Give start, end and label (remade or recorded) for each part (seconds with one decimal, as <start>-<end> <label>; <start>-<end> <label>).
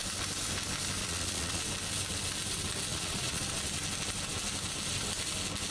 0.0-1.0 recorded; 1.0-1.6 remade; 1.6-2.9 recorded; 2.9-3.4 remade; 3.4-5.7 recorded